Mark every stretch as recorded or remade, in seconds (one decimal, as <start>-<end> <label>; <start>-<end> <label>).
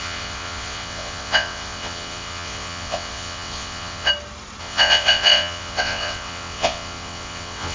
0.0-4.1 remade; 4.1-4.6 recorded; 4.6-7.7 remade